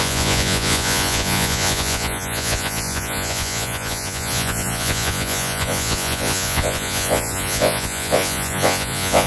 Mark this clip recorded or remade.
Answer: remade